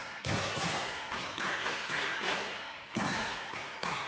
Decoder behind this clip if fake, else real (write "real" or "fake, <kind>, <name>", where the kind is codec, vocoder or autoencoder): fake, codec, SNAC